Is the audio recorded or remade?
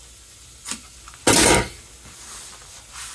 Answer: recorded